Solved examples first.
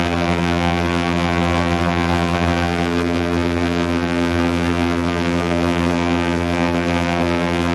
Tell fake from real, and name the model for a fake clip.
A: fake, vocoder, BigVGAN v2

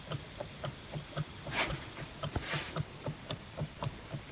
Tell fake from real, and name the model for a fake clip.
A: fake, vocoder, BigVGAN v2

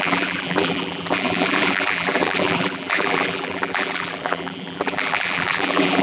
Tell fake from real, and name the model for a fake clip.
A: fake, vocoder, BigVGAN v2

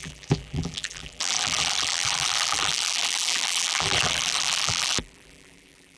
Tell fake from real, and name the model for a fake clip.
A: fake, vocoder, BigVGAN v2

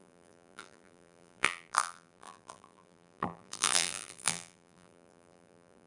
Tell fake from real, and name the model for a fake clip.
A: fake, vocoder, BigVGAN v2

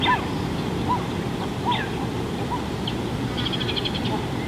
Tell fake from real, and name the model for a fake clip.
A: real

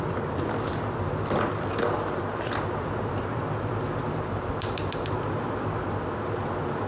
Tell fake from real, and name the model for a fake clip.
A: fake, vocoder, BigVGAN v2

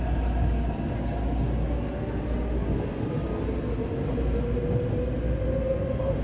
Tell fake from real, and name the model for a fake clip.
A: real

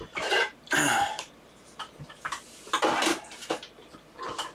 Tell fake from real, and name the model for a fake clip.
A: fake, vocoder, BigVGAN v2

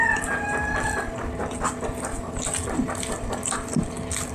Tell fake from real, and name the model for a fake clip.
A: fake, vocoder, BigVGAN v2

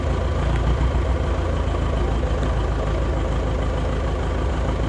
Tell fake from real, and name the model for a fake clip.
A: real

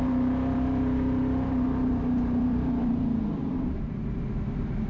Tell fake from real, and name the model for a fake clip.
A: fake, vocoder, BigVGAN v2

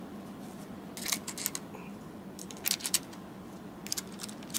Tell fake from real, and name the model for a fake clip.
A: real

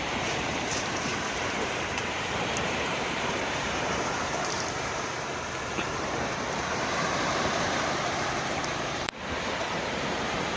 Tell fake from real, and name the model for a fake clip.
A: fake, vocoder, BigVGAN v2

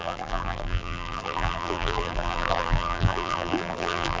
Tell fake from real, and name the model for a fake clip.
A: fake, vocoder, BigVGAN v2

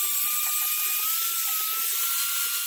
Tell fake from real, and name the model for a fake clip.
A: real